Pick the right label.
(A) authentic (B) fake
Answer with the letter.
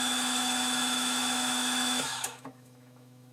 B